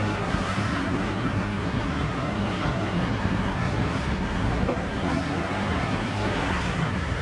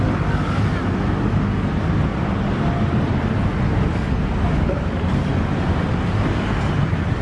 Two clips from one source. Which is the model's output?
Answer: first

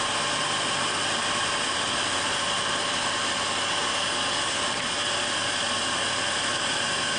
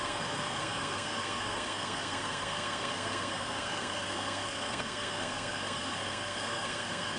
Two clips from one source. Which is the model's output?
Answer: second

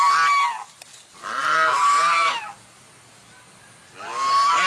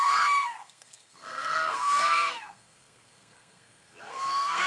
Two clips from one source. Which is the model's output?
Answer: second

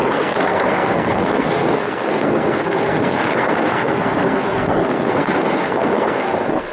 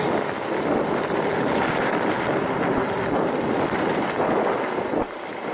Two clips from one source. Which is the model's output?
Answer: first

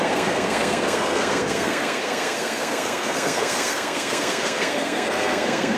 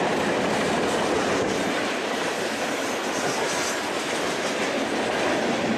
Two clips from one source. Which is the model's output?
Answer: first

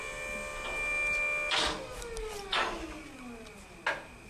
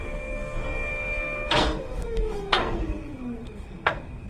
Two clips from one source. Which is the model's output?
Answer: second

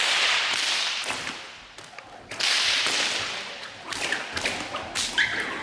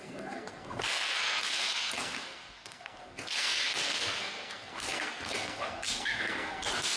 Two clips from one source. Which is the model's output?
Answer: second